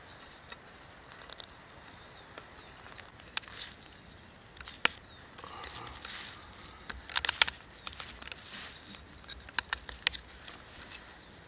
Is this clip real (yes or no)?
yes